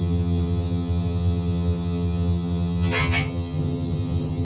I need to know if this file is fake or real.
fake